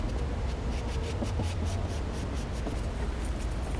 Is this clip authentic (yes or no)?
yes